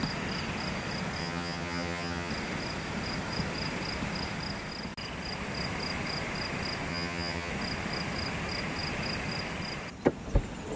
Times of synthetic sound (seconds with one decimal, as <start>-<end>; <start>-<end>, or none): 1.2-2.3; 6.9-7.5